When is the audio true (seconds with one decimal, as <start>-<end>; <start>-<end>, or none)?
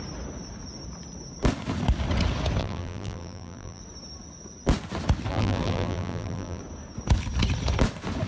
0.0-2.6; 3.8-5.3; 6.6-8.3